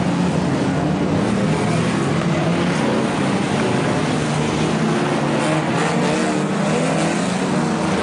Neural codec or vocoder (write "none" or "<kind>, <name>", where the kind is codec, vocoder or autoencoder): none